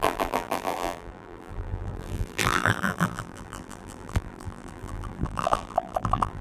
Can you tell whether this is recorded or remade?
remade